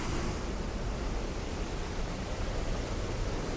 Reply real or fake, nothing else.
real